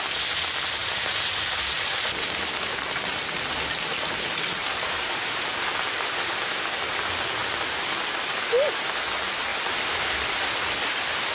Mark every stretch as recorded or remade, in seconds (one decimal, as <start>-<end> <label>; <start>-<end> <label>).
0.0-0.8 recorded; 0.8-5.2 remade; 5.2-11.3 recorded